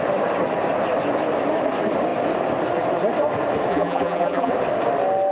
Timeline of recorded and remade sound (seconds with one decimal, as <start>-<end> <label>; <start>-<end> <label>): 0.0-3.7 recorded; 3.7-4.5 remade; 4.5-5.3 recorded